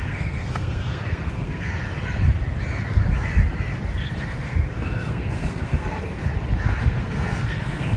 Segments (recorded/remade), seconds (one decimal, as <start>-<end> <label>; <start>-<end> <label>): 0.0-1.7 remade; 1.7-3.9 recorded; 3.9-6.3 remade; 6.3-6.8 recorded; 6.8-8.0 remade